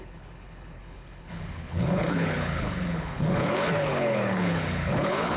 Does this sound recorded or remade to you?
remade